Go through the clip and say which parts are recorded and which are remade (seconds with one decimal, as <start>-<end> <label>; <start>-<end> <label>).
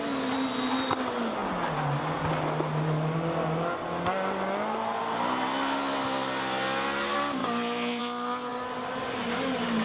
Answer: 0.0-9.8 recorded